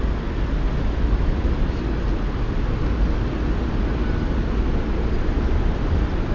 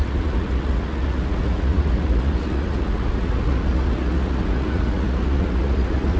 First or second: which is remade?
second